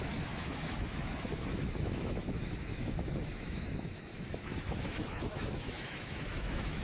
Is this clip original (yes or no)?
no